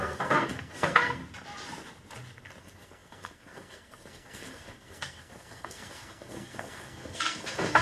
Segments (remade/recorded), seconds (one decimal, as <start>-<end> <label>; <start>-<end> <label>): 0.0-1.2 remade; 1.2-2.6 recorded; 2.6-7.8 remade